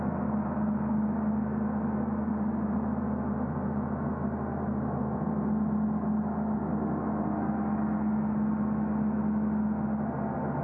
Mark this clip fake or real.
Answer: real